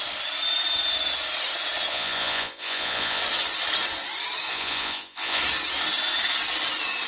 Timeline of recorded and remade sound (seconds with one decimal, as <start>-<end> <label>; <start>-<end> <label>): 0.0-1.9 recorded; 1.9-3.2 remade; 3.2-4.5 recorded; 4.5-5.4 remade; 5.4-7.1 recorded